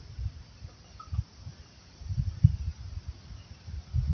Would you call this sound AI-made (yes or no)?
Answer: no